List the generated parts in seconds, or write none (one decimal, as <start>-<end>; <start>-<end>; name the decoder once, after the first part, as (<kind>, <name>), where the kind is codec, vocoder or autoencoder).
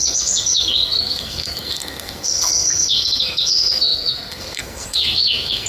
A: 0.0-5.7 (codec, SNAC)